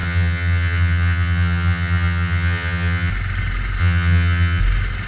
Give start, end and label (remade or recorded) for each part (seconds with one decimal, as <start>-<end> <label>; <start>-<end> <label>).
0.0-3.1 remade; 3.1-3.8 recorded; 3.8-4.6 remade; 4.6-5.1 recorded